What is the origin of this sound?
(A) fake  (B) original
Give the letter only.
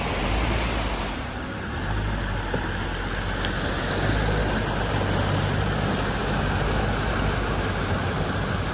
B